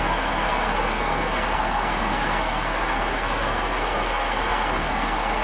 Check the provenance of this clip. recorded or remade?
remade